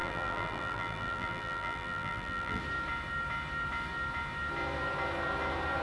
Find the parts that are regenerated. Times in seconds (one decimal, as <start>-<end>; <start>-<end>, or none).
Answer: 0.0-2.6